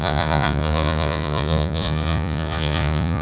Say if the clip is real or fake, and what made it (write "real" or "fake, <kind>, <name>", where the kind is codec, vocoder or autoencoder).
fake, vocoder, Vocos